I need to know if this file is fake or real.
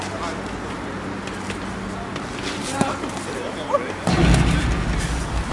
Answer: real